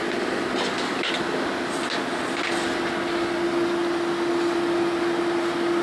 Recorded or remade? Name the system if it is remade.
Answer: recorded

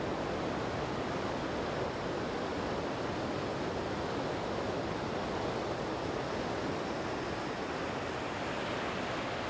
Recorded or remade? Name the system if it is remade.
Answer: recorded